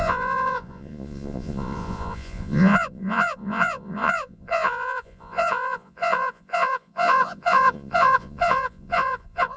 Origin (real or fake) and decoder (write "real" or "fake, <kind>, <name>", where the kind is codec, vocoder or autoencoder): fake, vocoder, Vocos